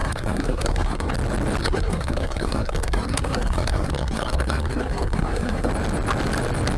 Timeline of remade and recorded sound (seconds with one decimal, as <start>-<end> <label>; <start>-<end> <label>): 0.0-1.1 remade; 1.1-1.6 recorded; 1.6-5.7 remade; 5.7-6.8 recorded